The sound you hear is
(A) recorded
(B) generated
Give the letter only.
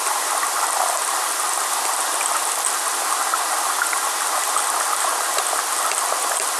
A